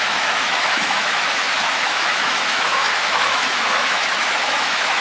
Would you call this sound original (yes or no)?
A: no